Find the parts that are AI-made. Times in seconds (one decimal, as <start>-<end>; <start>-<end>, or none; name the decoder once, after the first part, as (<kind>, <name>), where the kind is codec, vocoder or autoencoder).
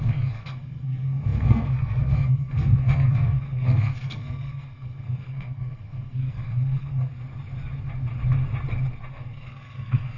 0.0-7.1 (codec, SNAC); 9.1-10.2